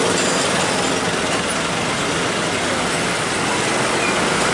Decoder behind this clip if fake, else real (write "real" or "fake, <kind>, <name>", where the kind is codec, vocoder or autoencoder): real